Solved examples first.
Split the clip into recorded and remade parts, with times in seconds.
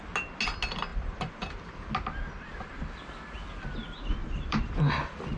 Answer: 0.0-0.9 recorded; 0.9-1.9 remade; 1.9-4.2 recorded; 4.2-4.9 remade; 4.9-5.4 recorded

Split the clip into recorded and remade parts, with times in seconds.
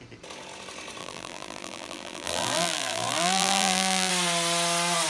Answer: 0.0-1.0 recorded; 1.0-4.1 remade; 4.1-5.1 recorded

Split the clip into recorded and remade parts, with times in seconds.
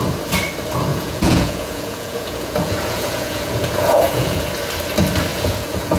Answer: 0.0-0.9 recorded; 0.9-4.5 remade; 4.5-5.3 recorded; 5.3-6.0 remade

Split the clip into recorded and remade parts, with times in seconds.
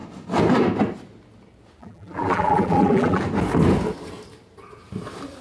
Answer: 0.0-1.8 recorded; 1.8-3.2 remade; 3.2-5.4 recorded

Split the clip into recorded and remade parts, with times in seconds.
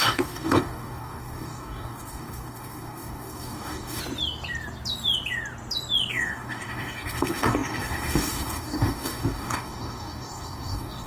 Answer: 0.0-4.0 remade; 4.0-6.1 recorded; 6.1-11.1 remade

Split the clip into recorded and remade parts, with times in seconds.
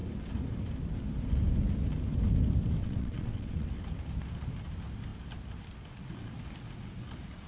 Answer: 0.0-2.8 recorded; 2.8-3.8 remade; 3.8-7.5 recorded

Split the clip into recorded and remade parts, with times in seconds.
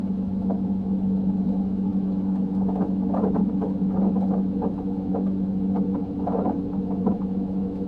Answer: 0.0-7.9 remade